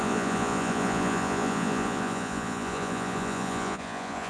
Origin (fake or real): fake